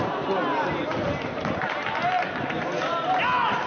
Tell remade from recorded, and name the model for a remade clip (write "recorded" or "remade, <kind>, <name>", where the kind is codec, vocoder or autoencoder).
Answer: recorded